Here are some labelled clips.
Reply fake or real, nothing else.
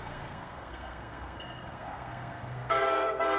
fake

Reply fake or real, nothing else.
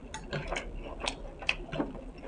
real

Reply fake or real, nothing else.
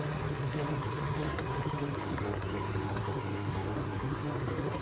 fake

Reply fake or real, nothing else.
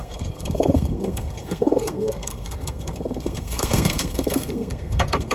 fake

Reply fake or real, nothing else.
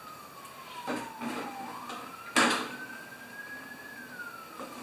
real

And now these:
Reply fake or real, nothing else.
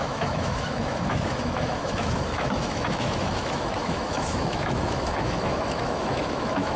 fake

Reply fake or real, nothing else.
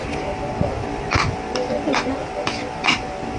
real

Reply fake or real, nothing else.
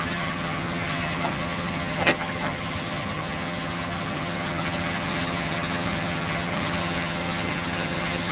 fake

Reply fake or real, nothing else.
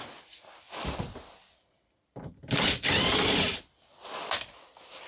real